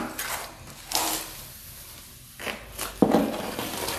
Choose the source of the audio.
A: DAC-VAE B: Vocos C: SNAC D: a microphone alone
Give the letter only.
D